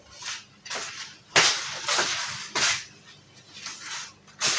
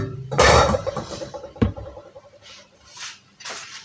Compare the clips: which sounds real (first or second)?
first